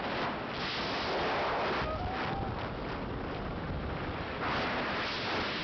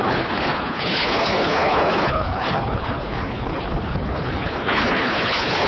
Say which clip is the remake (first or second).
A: second